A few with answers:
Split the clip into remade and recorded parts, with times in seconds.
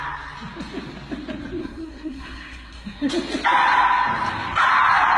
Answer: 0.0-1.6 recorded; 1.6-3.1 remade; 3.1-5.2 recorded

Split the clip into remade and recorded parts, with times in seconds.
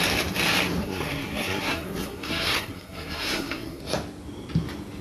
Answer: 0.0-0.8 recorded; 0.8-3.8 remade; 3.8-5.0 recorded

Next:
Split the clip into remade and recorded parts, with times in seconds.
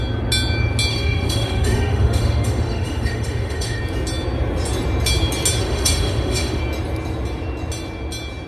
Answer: 0.0-0.9 recorded; 0.9-3.8 remade; 3.8-5.6 recorded; 5.6-6.6 remade; 6.6-8.5 recorded